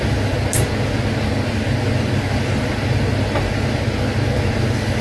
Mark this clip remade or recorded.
recorded